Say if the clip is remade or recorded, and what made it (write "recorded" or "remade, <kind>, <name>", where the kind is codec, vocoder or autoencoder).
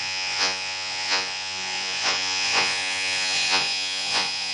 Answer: remade, vocoder, Vocos